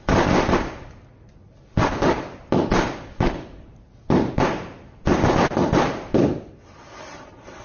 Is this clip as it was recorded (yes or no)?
yes